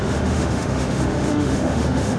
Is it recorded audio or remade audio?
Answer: remade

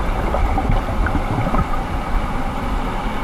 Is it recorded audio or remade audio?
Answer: recorded